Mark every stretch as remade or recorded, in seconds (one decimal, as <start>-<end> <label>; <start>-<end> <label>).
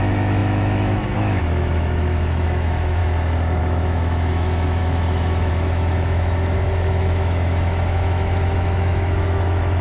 0.0-3.0 remade; 3.0-3.6 recorded; 3.6-9.8 remade